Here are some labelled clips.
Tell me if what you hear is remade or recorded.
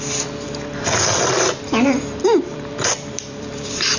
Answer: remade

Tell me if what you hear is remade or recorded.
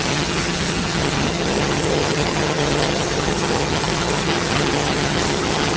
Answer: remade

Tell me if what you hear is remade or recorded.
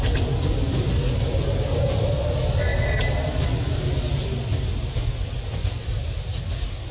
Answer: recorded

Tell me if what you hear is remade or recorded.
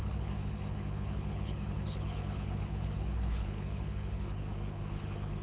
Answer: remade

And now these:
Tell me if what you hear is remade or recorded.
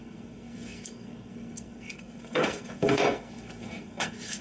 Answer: remade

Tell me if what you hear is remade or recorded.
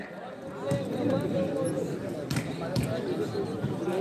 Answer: recorded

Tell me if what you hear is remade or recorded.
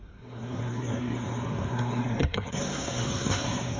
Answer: remade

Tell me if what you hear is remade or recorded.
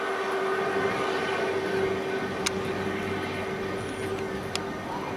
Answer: recorded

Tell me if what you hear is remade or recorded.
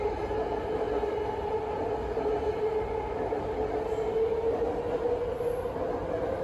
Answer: recorded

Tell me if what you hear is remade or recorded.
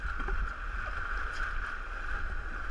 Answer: recorded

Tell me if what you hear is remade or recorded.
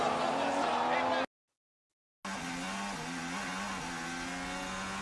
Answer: recorded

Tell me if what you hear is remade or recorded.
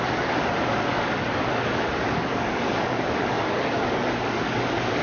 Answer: remade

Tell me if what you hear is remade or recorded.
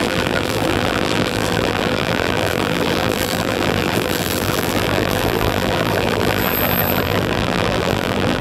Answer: remade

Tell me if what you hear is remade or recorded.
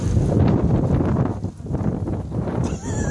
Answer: recorded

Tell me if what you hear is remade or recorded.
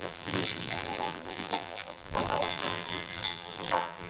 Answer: remade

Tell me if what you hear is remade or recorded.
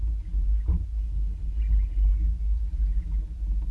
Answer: recorded